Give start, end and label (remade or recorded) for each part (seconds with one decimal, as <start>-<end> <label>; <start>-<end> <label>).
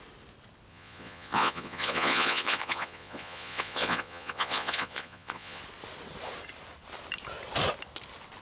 0.0-0.7 recorded; 0.7-5.6 remade; 5.6-8.4 recorded